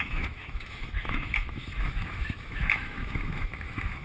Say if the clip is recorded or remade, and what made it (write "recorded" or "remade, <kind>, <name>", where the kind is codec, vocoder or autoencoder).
remade, autoencoder, DAC-VAE